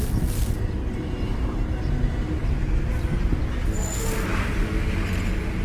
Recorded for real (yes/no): yes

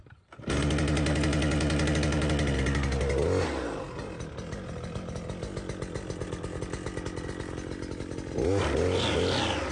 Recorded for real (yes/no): yes